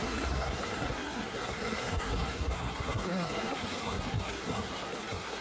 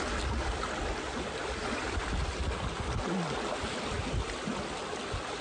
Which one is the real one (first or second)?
second